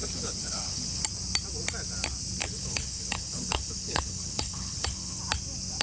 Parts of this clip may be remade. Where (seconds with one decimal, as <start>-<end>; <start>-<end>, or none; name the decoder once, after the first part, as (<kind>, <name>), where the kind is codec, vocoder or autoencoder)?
0.0-1.0 (codec, HILCodec); 2.4-5.2